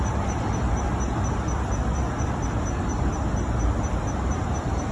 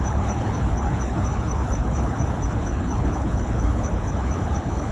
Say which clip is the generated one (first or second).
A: second